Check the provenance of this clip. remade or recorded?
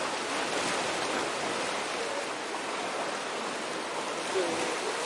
recorded